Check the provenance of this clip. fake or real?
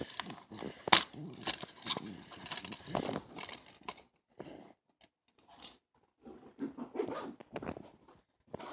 real